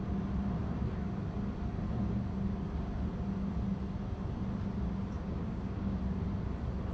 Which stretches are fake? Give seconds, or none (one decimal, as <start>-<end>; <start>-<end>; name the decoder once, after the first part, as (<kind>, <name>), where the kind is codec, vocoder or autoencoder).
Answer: 5.2-6.0 (codec, DAC)